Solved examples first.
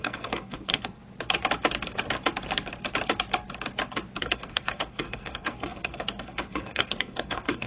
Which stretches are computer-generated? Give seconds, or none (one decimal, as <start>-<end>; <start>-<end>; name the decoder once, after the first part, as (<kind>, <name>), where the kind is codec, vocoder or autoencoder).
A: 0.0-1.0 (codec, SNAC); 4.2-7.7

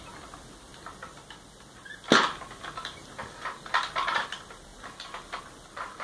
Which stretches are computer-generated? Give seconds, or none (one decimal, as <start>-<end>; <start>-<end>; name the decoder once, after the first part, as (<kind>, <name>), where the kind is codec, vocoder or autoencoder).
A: none

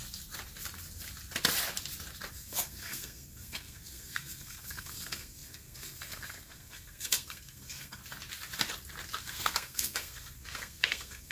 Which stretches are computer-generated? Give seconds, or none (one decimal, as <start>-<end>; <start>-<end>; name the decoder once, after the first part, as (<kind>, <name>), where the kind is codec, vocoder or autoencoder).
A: 2.3-8.0 (codec, SNAC); 9.2-11.3